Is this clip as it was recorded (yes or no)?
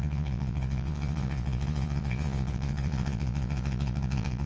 no